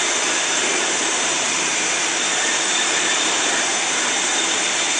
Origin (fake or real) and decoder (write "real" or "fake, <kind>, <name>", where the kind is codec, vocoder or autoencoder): fake, vocoder, BigVGAN v2